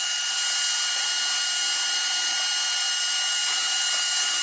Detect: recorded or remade recorded